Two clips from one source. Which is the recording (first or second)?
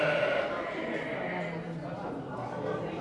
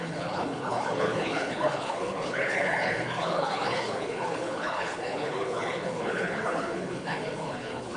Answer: first